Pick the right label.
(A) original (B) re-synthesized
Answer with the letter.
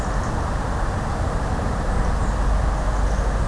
A